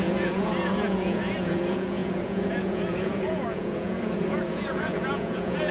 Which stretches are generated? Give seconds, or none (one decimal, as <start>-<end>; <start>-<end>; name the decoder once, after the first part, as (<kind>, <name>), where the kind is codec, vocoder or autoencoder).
0.0-5.7 (vocoder, Vocos)